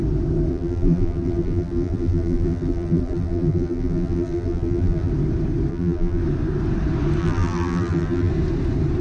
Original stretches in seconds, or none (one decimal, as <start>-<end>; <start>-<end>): 0.0-0.5; 5.1-5.7; 6.2-7.2; 8.3-9.0